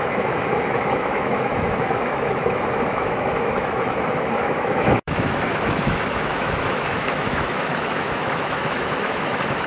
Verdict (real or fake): fake